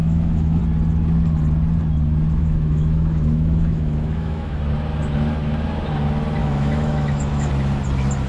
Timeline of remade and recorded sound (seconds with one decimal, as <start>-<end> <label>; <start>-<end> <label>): 0.0-0.6 remade; 0.6-2.4 recorded; 2.4-4.6 remade; 4.6-6.4 recorded; 6.4-7.5 remade; 7.5-8.3 recorded